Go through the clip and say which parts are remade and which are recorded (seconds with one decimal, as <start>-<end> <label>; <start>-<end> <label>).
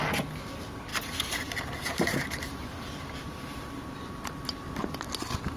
0.0-0.9 recorded; 0.9-4.3 remade; 4.3-5.6 recorded